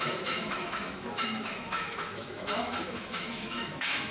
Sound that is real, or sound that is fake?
fake